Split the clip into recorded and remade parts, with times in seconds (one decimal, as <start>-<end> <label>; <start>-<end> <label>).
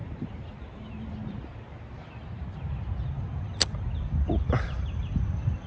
0.0-1.1 remade; 1.1-5.7 recorded